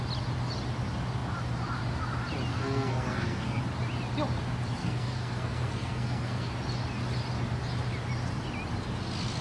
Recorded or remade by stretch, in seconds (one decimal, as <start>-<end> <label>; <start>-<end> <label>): 0.0-2.5 recorded; 2.5-3.6 remade; 3.6-4.8 recorded; 4.8-6.5 remade; 6.5-9.4 recorded